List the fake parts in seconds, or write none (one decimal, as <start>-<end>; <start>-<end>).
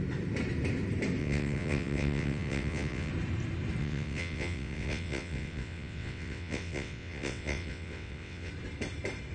1.2-3.1; 3.8-8.5